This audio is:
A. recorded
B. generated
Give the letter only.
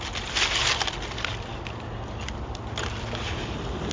A